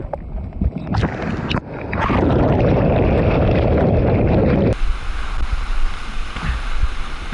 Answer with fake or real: real